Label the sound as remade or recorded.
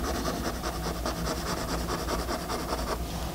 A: recorded